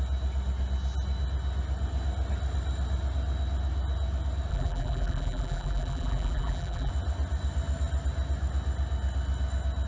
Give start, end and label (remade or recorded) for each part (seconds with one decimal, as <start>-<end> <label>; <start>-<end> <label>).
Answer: 0.0-4.5 recorded; 4.5-6.9 remade; 6.9-9.9 recorded